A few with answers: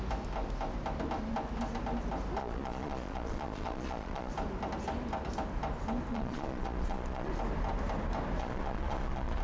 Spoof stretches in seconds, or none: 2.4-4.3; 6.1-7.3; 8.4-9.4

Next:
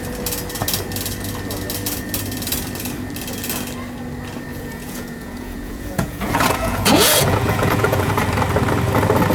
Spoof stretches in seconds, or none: 4.5-8.1

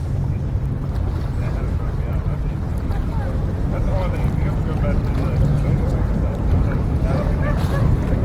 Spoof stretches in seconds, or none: 5.5-6.1

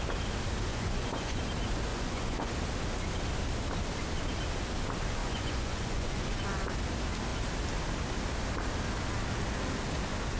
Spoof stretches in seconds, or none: 0.7-1.4; 1.9-2.5; 5.2-6.7

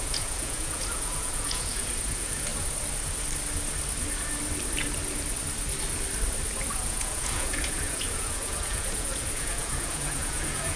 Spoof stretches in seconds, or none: 0.0-2.5; 6.7-10.8